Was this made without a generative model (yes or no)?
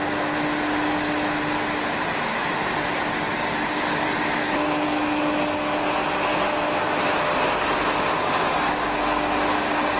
yes